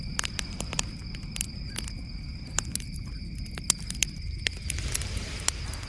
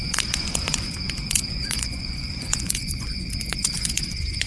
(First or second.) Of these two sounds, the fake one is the second